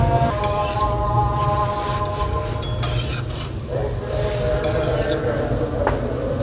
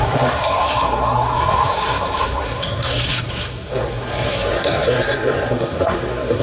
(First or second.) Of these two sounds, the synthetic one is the second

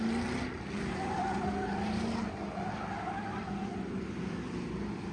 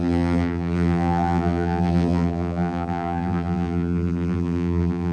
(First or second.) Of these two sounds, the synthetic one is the second